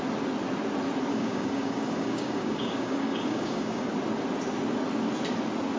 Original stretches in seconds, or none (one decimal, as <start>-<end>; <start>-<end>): 0.0-1.1; 3.9-5.8